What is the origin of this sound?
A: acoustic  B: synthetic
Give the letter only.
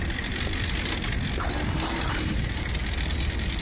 A